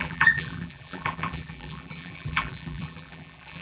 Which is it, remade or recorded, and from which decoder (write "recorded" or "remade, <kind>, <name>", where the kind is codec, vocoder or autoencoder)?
remade, vocoder, BigVGAN v2